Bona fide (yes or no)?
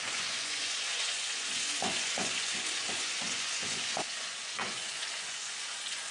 no